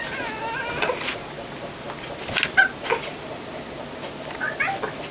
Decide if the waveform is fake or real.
real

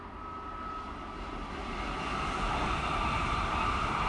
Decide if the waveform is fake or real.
real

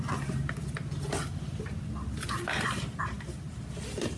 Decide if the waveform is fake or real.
real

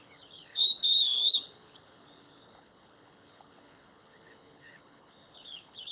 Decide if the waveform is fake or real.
fake